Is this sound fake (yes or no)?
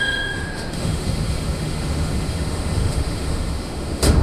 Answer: yes